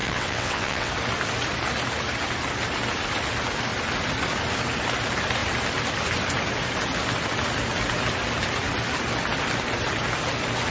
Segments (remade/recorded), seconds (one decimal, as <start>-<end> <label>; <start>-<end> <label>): 0.0-0.9 remade; 0.9-10.7 recorded